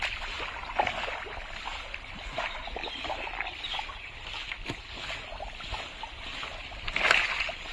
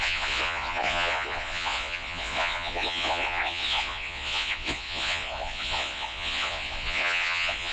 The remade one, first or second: second